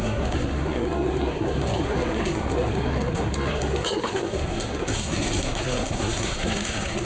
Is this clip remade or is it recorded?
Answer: remade